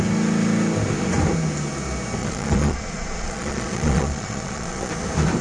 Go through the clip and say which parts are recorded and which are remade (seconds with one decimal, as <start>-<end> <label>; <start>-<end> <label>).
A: 0.0-2.2 recorded; 2.2-4.9 remade; 4.9-5.4 recorded